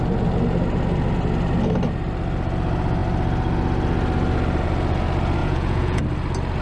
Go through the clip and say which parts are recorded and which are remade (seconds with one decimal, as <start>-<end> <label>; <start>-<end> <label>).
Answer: 0.0-5.4 recorded; 5.4-6.0 remade; 6.0-6.6 recorded